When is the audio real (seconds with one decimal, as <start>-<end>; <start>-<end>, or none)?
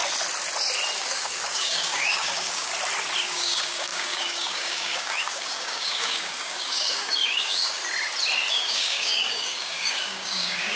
0.0-1.0; 2.7-3.2; 7.8-8.5